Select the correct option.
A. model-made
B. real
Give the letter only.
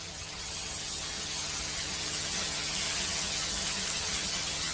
A